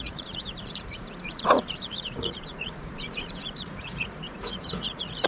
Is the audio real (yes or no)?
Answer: no